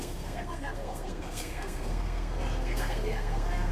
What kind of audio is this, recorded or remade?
remade